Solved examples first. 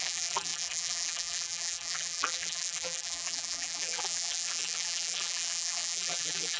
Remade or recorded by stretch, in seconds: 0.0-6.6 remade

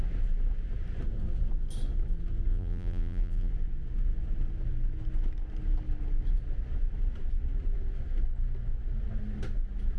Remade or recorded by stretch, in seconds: 0.0-2.5 recorded; 2.5-3.5 remade; 3.5-10.0 recorded